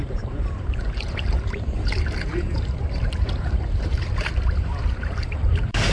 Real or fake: fake